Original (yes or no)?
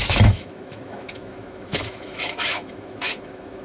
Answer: no